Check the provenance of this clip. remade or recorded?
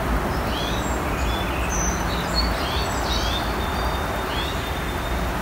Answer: recorded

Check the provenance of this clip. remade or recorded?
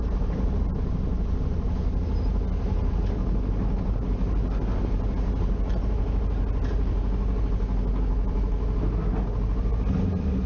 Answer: recorded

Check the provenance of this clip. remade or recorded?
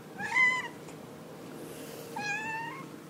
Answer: recorded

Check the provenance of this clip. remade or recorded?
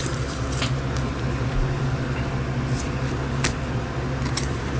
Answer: remade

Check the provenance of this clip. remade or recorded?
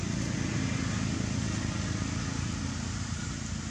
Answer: recorded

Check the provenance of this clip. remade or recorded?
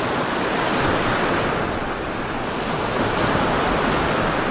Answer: recorded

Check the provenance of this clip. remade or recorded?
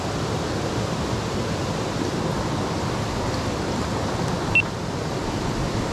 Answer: recorded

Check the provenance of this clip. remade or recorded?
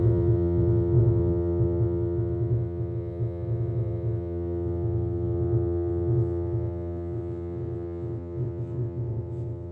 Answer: remade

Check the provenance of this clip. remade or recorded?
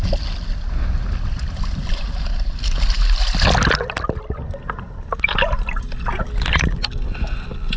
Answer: recorded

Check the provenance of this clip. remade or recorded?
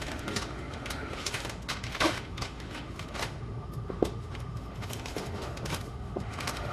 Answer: remade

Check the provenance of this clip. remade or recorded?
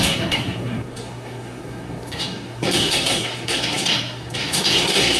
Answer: remade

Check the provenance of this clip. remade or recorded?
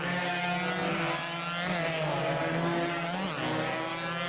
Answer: recorded